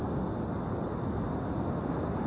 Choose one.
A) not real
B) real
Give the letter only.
B